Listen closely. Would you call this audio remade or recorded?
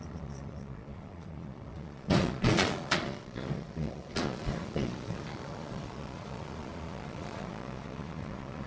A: remade